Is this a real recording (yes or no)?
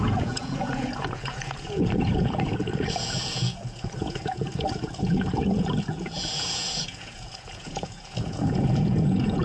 no